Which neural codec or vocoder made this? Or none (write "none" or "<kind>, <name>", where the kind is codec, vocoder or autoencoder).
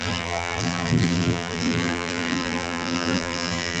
vocoder, BigVGAN v2